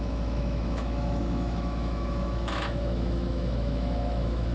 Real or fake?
fake